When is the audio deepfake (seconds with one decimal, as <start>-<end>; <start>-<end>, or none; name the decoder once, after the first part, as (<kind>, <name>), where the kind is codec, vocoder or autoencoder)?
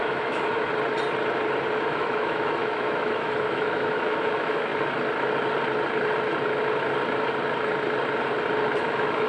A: 0.0-0.7 (autoencoder, DAC-VAE); 1.8-4.7; 8.8-9.3